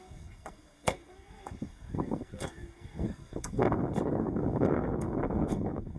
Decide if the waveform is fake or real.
fake